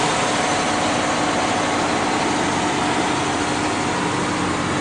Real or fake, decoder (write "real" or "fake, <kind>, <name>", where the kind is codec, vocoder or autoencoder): real